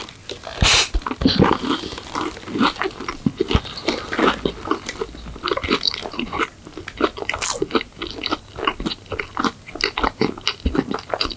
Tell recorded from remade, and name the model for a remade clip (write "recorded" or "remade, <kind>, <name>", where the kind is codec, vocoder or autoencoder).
recorded